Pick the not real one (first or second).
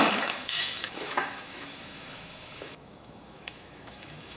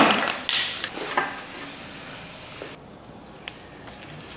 first